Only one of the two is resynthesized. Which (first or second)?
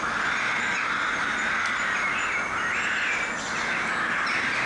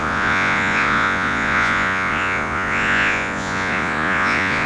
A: second